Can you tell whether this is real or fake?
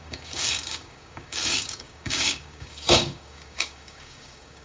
fake